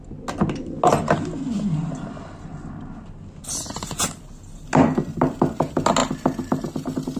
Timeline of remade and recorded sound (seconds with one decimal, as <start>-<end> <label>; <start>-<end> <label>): 0.0-7.2 recorded